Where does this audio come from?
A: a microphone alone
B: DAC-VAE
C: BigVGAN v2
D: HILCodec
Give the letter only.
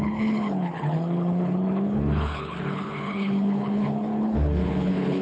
D